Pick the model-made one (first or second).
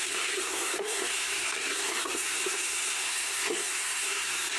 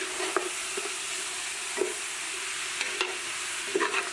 first